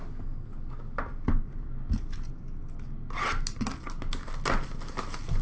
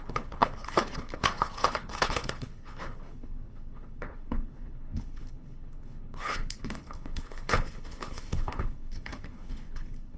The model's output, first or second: second